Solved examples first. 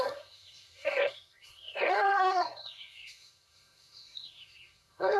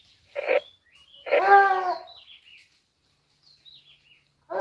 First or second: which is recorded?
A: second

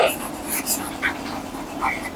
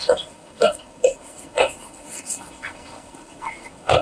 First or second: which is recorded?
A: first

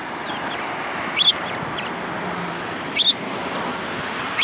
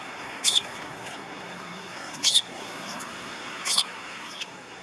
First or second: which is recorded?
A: first